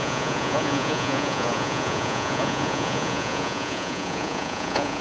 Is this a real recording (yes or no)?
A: no